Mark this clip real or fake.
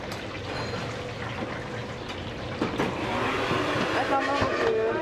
real